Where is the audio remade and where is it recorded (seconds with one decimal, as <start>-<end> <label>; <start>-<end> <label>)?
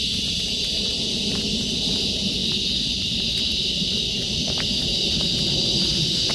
0.0-2.4 recorded; 2.4-6.3 remade